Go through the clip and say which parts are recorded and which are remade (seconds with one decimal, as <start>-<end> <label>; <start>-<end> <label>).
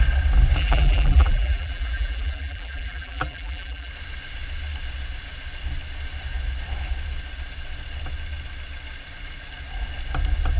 0.0-0.6 recorded; 0.6-3.9 remade; 3.9-10.6 recorded